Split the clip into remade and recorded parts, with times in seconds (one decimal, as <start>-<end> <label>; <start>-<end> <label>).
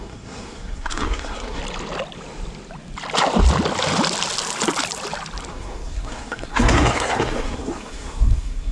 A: 0.0-1.6 remade; 1.6-5.5 recorded; 5.5-8.7 remade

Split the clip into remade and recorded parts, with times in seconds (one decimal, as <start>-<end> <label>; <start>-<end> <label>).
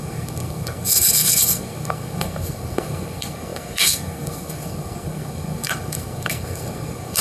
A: 0.0-7.2 remade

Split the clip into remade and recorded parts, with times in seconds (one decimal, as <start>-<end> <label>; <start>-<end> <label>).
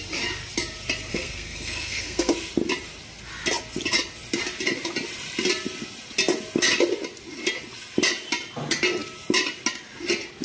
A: 0.0-1.1 recorded; 1.1-2.3 remade; 2.3-10.4 recorded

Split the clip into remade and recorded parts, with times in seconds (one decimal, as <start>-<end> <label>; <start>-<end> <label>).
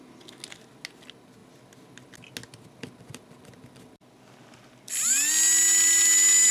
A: 0.0-6.5 recorded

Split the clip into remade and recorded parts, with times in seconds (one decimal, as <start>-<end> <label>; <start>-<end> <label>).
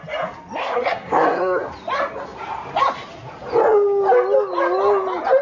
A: 0.0-0.6 recorded; 0.6-1.7 remade; 1.7-5.4 recorded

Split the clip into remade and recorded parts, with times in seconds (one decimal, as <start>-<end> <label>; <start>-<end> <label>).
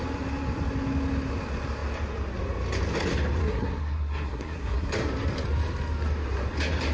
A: 0.0-3.4 recorded; 3.4-4.9 remade; 4.9-6.9 recorded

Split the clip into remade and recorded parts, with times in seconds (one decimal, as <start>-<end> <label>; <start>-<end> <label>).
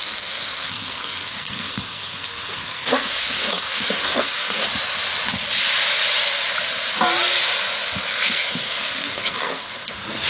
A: 0.0-4.6 remade; 4.6-8.1 recorded; 8.1-10.3 remade